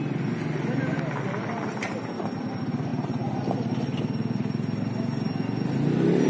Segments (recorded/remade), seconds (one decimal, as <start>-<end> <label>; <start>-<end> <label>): 0.0-2.9 recorded; 2.9-3.4 remade; 3.4-6.3 recorded